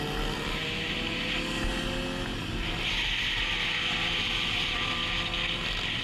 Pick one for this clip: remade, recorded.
recorded